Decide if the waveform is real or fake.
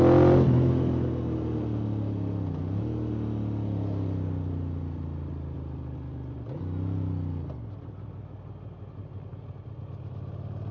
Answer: real